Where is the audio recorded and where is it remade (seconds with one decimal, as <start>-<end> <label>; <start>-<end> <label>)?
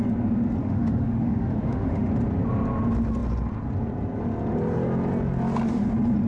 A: 0.0-0.6 recorded; 0.6-2.1 remade; 2.1-6.3 recorded